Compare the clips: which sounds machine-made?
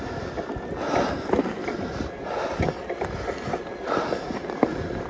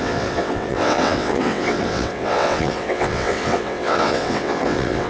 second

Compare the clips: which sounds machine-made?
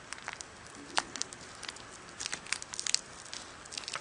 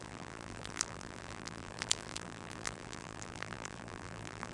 second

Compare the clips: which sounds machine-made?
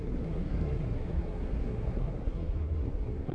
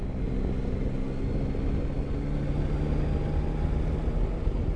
first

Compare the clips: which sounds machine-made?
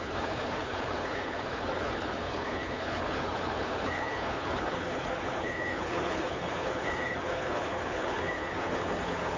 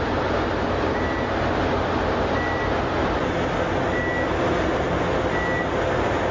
first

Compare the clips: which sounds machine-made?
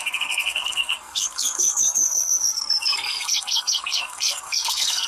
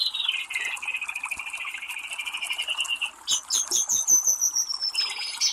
first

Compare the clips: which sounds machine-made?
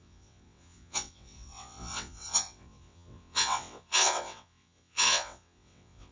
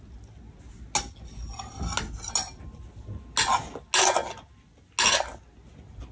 first